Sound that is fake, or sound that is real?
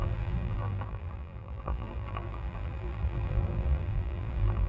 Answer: fake